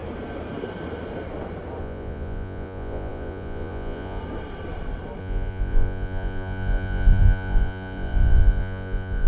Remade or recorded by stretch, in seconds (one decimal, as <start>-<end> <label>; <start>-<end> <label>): 0.0-1.8 recorded; 1.8-4.2 remade; 4.2-5.2 recorded; 5.2-9.3 remade